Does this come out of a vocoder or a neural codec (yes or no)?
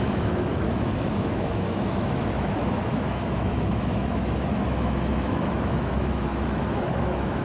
yes